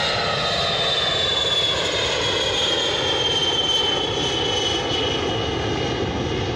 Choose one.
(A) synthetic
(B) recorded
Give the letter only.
B